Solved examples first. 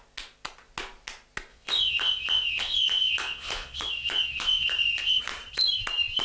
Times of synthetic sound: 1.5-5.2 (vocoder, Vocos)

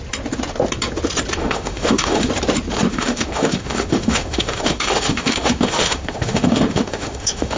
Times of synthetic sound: 1.4-2.3 (autoencoder, DAC-VAE); 2.9-7.6

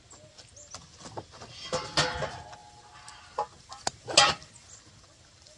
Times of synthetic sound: none